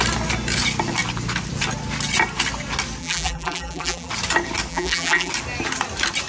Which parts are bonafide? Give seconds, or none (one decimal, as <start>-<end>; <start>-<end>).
0.0-3.0; 4.1-4.7; 5.3-6.3